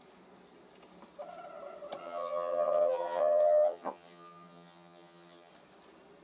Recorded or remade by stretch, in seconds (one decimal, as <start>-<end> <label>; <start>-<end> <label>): 0.0-2.0 recorded; 2.0-5.5 remade; 5.5-6.2 recorded